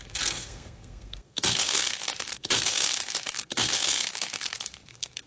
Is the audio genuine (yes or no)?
no